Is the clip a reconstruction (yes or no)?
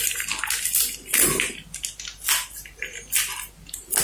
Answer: no